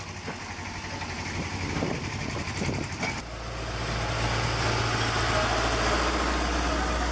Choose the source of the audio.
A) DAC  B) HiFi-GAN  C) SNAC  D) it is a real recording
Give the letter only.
D